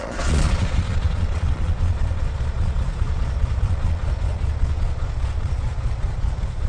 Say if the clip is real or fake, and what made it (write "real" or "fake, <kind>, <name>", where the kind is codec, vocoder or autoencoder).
fake, vocoder, Vocos